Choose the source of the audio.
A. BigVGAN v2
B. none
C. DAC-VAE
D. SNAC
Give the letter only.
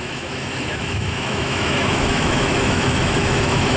C